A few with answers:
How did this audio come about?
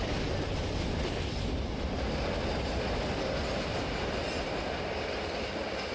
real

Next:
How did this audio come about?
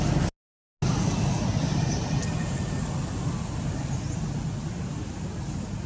real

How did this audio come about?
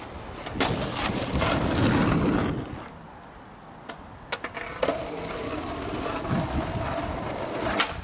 real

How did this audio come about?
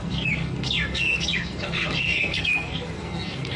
fake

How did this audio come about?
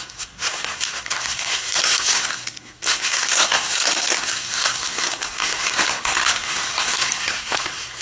fake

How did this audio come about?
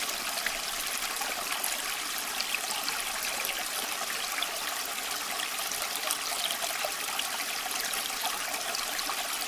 real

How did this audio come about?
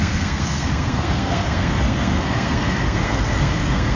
fake